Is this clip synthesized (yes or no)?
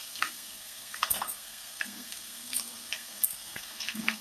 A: yes